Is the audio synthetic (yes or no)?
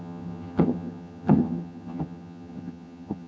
yes